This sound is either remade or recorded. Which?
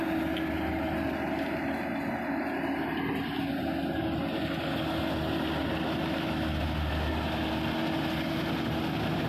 recorded